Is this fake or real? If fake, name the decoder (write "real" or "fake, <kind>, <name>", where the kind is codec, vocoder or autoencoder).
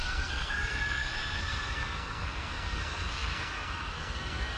fake, codec, SNAC